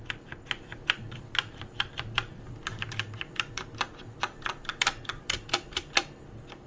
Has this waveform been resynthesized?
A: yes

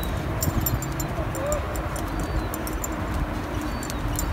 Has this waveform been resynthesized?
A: no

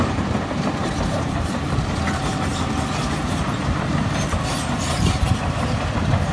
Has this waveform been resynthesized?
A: yes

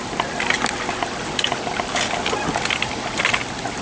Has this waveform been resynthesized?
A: no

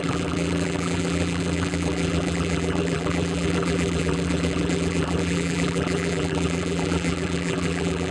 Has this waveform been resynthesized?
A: yes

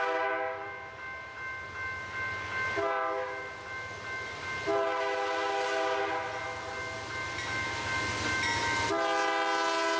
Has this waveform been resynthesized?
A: no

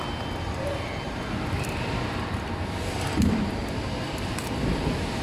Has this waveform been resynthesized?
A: no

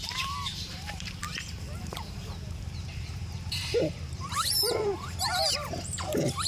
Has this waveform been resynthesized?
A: yes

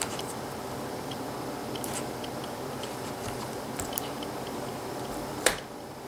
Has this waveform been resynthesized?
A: yes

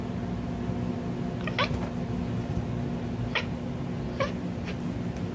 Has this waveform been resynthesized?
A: no